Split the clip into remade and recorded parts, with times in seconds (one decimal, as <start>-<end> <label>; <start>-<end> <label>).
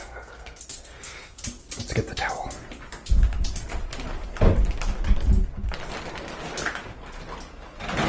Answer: 0.0-1.4 remade; 1.4-8.1 recorded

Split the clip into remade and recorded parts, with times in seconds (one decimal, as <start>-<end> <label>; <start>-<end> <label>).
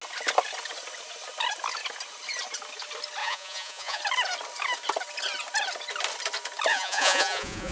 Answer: 0.0-3.2 recorded; 3.2-4.0 remade; 4.0-6.7 recorded; 6.7-7.7 remade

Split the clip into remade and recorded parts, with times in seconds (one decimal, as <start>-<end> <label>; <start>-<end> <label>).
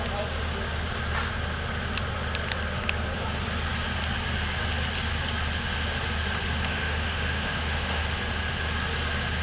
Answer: 0.0-6.7 recorded; 6.7-8.0 remade; 8.0-9.4 recorded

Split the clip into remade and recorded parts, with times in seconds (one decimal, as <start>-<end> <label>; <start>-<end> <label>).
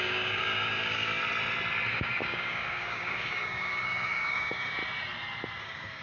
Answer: 0.0-1.2 remade; 1.2-1.9 recorded; 1.9-4.8 remade; 4.8-5.6 recorded; 5.6-6.0 remade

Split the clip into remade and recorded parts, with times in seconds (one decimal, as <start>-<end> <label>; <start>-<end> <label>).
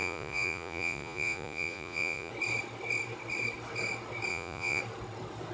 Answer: 0.0-2.3 remade; 2.3-4.3 recorded; 4.3-4.8 remade; 4.8-5.5 recorded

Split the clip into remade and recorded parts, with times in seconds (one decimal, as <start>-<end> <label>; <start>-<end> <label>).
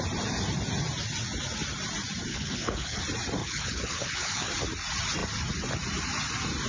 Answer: 0.0-2.3 recorded; 2.3-3.0 remade; 3.0-3.4 recorded; 3.4-4.5 remade; 4.5-6.7 recorded